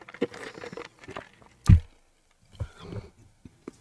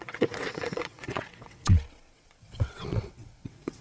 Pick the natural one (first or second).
first